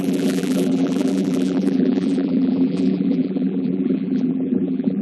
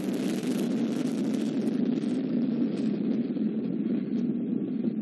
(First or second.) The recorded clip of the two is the second